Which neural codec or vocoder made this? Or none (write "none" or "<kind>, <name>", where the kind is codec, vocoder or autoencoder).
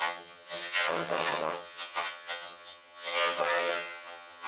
vocoder, HiFi-GAN